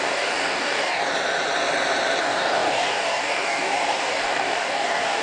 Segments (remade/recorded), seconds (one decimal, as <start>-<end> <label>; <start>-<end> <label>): 0.0-1.0 remade; 1.0-2.2 recorded; 2.2-5.2 remade